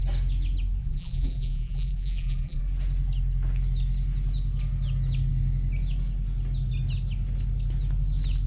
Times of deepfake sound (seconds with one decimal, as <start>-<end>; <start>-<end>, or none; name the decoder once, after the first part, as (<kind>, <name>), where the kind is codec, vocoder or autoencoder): 0.8-2.6 (vocoder, BigVGAN v2)